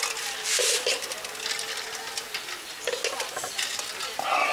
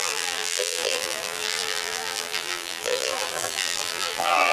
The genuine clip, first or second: first